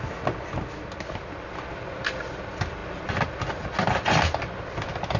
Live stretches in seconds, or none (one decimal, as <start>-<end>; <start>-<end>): 0.0-5.2